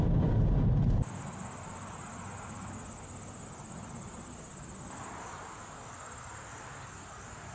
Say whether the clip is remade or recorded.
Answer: recorded